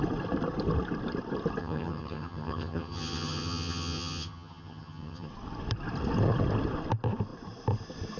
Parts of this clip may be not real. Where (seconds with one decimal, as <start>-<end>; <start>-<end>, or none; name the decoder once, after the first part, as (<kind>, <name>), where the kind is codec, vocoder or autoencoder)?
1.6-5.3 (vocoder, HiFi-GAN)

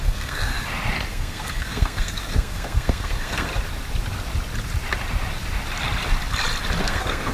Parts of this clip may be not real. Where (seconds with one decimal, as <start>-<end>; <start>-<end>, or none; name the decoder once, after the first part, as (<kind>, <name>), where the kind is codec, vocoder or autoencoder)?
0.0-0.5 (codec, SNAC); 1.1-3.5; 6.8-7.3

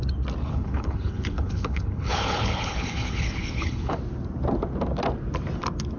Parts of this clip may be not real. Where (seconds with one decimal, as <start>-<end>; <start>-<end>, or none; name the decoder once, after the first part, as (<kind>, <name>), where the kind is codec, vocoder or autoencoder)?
0.4-4.0 (codec, HILCodec)

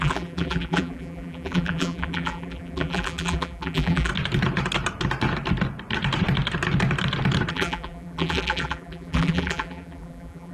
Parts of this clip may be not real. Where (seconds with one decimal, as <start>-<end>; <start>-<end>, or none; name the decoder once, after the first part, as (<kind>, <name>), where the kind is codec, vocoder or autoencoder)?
0.0-4.1 (vocoder, BigVGAN v2); 7.5-10.5

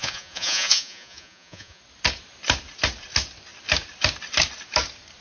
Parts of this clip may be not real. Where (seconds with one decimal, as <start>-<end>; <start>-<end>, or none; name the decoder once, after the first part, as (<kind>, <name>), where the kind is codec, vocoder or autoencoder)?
0.0-1.8 (vocoder, Vocos)

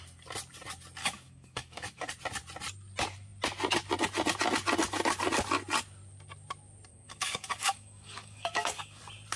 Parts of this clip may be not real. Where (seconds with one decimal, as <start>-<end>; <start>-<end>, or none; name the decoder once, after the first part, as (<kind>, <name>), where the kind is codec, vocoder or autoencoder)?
1.0-2.1 (codec, DAC); 6.9-9.0

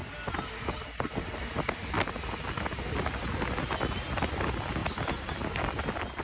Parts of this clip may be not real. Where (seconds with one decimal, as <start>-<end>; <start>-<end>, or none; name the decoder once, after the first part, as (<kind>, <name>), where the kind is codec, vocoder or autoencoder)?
none

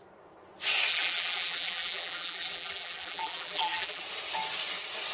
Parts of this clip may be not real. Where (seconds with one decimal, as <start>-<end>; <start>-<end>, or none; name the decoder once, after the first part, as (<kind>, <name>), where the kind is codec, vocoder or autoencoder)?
0.9-4.0 (vocoder, BigVGAN v2)